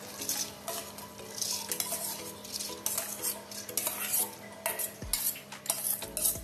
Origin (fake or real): real